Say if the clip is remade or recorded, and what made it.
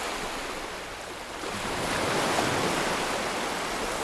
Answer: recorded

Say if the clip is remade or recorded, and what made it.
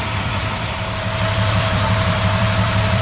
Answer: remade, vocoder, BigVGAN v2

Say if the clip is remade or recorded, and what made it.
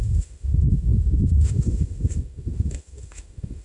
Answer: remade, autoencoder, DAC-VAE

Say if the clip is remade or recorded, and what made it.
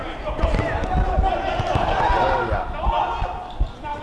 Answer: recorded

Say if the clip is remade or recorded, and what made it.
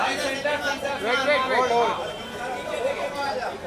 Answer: recorded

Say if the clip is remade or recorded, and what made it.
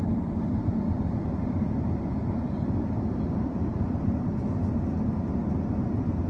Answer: recorded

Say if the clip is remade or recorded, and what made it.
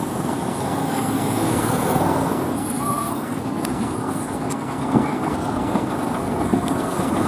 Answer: remade, codec, SNAC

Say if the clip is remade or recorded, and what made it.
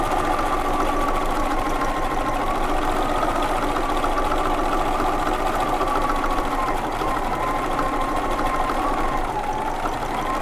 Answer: recorded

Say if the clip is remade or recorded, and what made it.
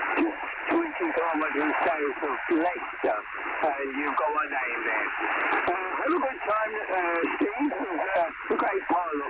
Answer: recorded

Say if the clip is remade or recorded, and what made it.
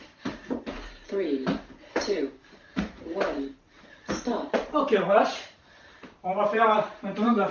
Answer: remade, vocoder, BigVGAN v2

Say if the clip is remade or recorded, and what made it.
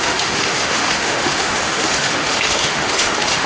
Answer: remade, autoencoder, DAC-VAE